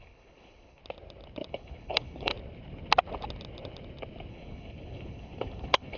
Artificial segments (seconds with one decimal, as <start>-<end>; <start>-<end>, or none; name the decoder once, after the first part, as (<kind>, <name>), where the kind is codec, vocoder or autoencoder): 0.0-0.8 (codec, HILCodec); 1.5-2.3; 4.3-6.0